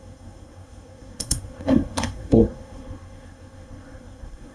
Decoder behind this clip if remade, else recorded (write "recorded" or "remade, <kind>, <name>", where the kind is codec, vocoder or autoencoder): remade, codec, SNAC